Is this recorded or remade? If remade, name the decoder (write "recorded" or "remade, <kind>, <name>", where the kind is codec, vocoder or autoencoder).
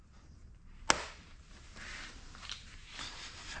recorded